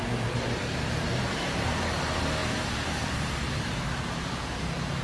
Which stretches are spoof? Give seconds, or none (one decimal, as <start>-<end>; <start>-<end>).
0.0-5.0